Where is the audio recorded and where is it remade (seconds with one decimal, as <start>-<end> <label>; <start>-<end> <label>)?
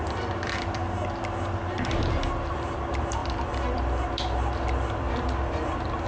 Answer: 0.0-0.8 remade; 0.8-2.3 recorded; 2.3-6.1 remade